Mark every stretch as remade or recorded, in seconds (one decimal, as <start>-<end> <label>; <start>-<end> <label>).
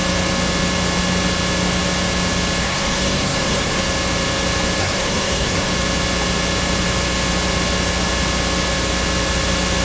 0.0-2.6 recorded; 2.6-3.8 remade; 3.8-4.8 recorded; 4.8-5.7 remade; 5.7-9.8 recorded